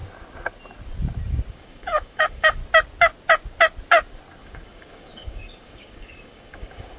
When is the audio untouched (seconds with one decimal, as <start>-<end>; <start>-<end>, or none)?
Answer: 0.0-1.5; 2.6-4.4